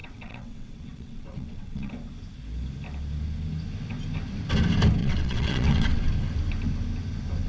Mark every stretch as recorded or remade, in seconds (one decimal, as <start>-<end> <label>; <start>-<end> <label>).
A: 0.0-1.9 remade; 1.9-5.0 recorded; 5.0-6.1 remade; 6.1-7.5 recorded